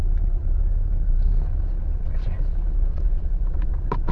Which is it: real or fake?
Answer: fake